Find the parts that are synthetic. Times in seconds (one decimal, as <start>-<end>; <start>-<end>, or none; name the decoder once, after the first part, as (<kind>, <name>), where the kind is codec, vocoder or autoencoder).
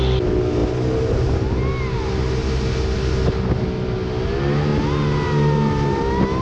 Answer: none